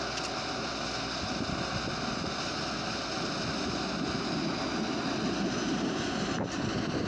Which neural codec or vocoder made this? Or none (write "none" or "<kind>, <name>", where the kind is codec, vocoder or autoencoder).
none